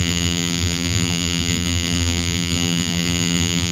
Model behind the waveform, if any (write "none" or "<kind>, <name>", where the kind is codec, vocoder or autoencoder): vocoder, BigVGAN v2